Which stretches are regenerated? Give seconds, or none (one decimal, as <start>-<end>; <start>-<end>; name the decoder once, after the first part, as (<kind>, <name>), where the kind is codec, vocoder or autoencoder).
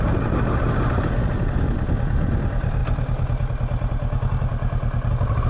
none